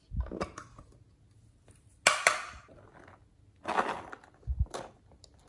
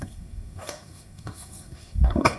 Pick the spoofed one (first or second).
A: second